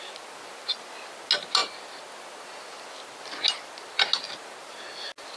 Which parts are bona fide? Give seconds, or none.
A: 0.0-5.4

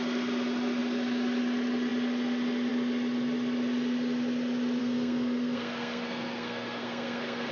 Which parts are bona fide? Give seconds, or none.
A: 0.0-4.8

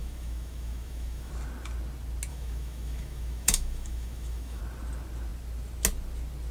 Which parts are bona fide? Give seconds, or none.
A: 1.3-2.3; 4.6-6.5

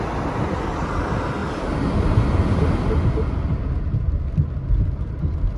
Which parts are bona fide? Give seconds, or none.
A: 0.0-5.6

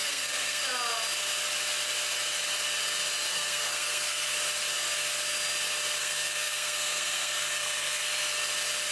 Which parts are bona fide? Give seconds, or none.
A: 0.6-3.3; 4.3-6.0; 8.0-8.9

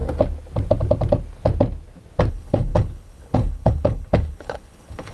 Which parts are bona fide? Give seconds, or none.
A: 0.0-2.3

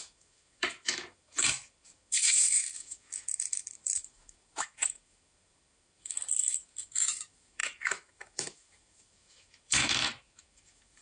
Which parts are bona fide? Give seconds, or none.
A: none

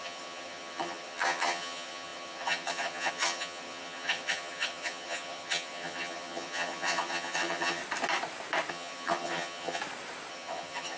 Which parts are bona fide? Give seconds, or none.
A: 7.8-8.7; 9.8-10.3